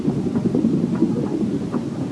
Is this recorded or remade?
recorded